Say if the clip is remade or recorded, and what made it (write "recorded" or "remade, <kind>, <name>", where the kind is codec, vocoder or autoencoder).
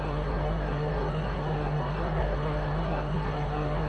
remade, codec, SNAC